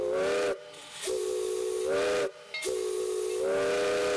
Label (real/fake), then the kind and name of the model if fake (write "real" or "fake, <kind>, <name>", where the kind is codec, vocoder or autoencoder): real